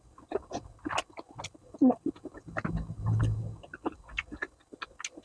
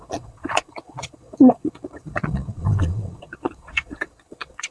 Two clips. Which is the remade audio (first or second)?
second